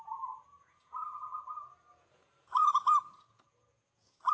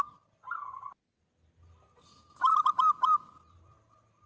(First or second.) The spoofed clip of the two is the first